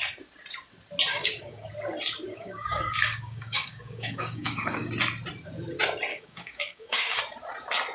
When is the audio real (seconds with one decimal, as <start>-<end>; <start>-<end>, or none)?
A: 0.0-1.1; 1.7-2.3; 4.9-6.1; 7.2-7.9